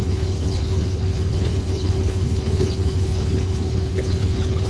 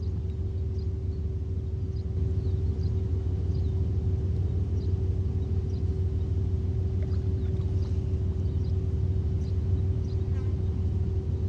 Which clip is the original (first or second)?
second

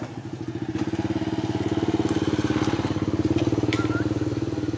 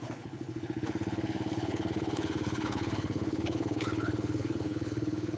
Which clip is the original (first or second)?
first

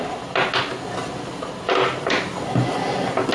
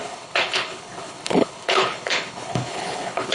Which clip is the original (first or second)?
first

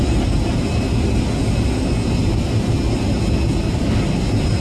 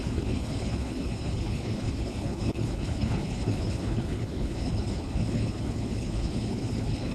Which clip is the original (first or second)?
first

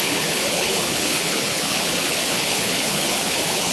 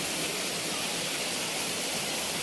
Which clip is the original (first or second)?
second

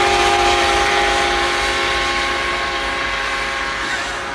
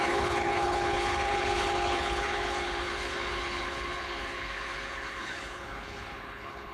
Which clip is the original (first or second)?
first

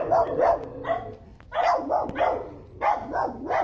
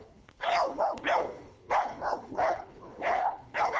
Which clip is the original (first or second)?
first